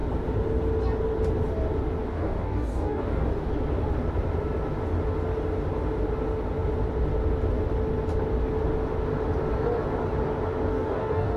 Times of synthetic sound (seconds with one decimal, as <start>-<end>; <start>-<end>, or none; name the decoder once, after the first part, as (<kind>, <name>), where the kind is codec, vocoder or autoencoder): 2.1-3.5 (codec, DAC); 10.7-11.4